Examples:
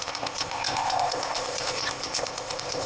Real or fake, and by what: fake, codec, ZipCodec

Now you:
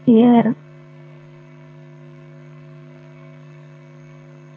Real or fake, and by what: fake, codec, SNAC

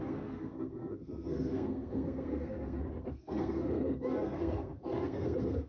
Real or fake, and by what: fake, codec, SNAC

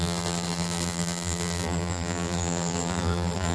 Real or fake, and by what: fake, vocoder, BigVGAN v2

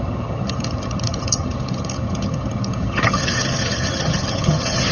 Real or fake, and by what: fake, vocoder, HiFi-GAN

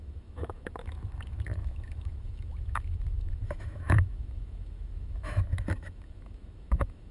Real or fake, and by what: fake, autoencoder, DAC-VAE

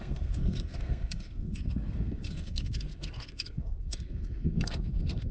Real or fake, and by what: fake, codec, SNAC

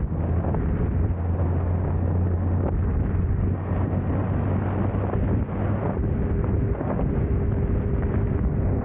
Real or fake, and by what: real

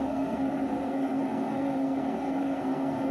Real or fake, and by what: fake, codec, SNAC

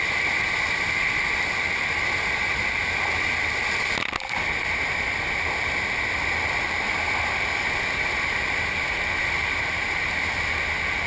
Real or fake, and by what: real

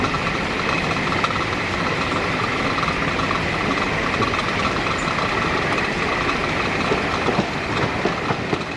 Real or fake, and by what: real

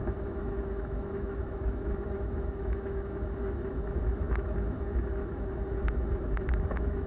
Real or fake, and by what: fake, autoencoder, DAC-VAE